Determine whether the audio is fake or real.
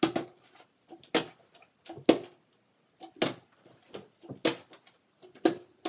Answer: real